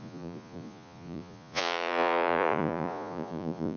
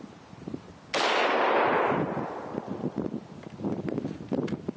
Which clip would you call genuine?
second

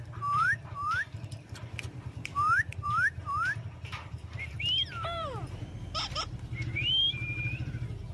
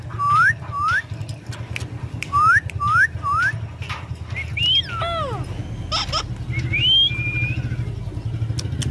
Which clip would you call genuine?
second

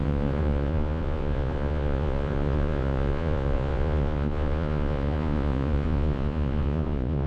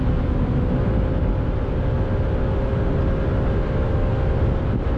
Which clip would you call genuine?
second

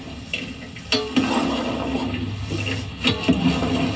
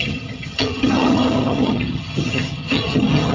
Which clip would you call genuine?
first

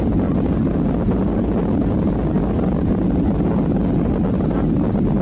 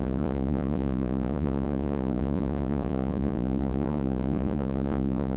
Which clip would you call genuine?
first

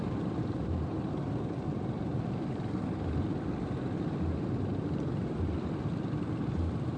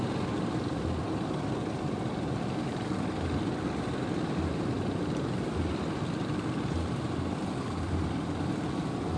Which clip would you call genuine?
second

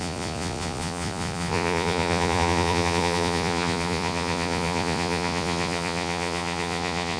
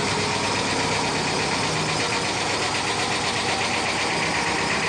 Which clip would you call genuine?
second